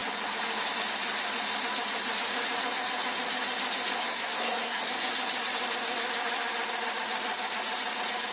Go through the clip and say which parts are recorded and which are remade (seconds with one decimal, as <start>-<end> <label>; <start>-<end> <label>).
0.0-4.0 recorded; 4.0-4.9 remade; 4.9-8.3 recorded